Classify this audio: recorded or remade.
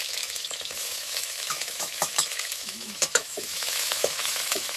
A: remade